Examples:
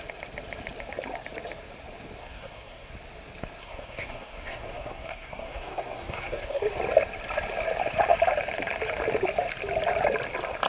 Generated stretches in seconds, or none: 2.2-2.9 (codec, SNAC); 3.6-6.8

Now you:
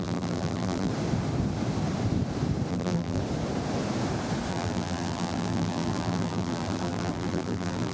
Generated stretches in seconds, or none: 0.0-0.9 (vocoder, BigVGAN v2); 2.7-3.2; 4.5-7.9